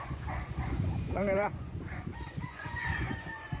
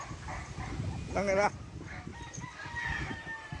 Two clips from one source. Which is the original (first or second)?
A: second